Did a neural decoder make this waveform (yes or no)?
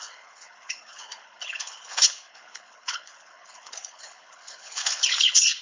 yes